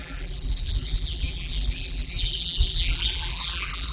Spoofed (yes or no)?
yes